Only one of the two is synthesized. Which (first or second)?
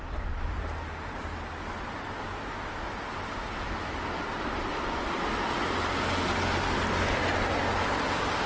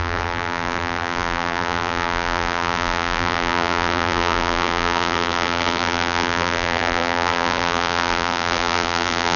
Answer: second